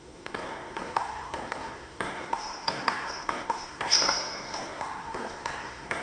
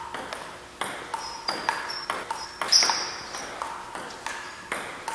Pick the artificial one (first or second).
first